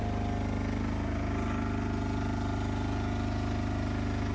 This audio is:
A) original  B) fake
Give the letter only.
A